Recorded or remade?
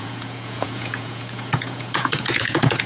remade